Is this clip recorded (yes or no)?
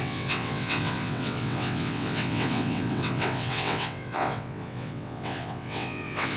no